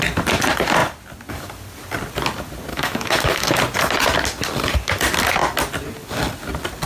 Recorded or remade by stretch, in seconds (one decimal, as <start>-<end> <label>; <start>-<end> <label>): 0.0-2.7 recorded; 2.7-3.6 remade; 3.6-6.9 recorded